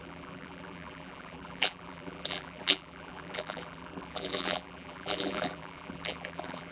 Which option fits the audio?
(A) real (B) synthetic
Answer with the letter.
B